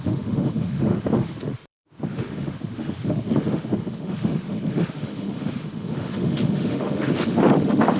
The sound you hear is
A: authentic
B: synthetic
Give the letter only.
B